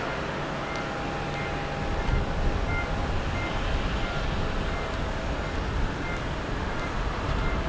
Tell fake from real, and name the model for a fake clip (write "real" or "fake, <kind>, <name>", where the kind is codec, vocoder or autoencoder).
real